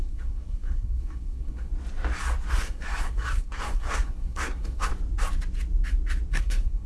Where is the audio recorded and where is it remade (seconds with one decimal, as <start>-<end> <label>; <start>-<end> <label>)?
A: 0.0-1.7 remade; 1.7-2.5 recorded; 2.5-4.9 remade; 4.9-6.3 recorded; 6.3-6.9 remade